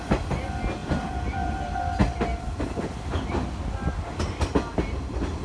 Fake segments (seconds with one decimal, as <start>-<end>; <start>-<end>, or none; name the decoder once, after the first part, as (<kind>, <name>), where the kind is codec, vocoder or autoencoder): 0.8-1.5 (vocoder, BigVGAN v2)